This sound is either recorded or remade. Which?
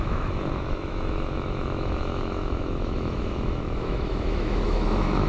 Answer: remade